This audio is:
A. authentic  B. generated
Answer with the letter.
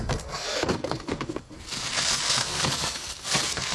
B